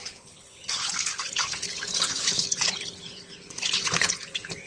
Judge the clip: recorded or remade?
remade